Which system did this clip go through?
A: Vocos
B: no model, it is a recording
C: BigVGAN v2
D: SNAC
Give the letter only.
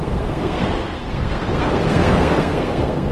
D